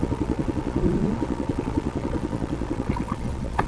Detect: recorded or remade remade